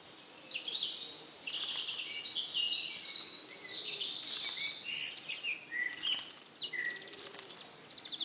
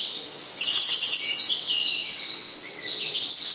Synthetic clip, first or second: second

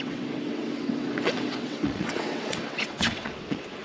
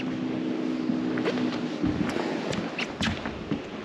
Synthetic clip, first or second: first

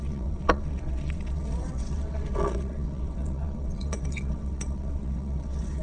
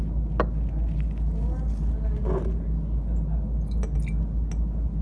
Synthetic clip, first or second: first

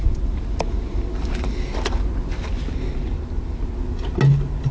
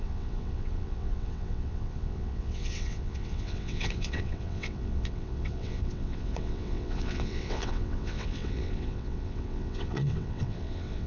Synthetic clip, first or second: second